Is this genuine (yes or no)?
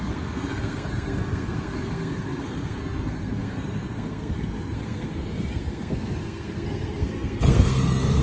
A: no